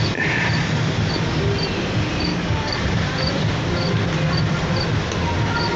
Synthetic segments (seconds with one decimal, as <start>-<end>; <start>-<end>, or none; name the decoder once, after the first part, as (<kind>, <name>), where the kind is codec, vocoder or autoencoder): 2.3-2.8 (codec, DAC)